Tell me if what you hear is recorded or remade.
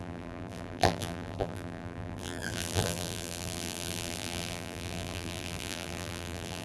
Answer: remade